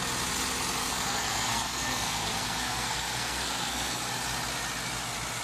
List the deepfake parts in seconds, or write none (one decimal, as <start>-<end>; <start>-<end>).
0.8-4.0